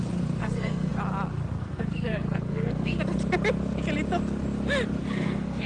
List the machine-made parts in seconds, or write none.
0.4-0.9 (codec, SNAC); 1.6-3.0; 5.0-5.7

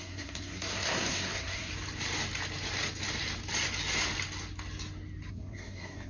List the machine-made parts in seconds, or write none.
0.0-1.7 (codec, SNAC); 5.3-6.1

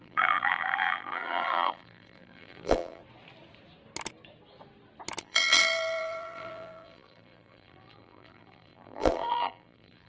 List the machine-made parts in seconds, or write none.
0.0-3.0 (vocoder, BigVGAN v2); 5.2-10.1

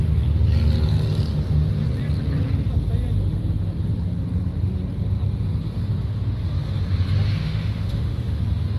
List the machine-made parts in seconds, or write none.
7.4-8.4 (autoencoder, DAC-VAE)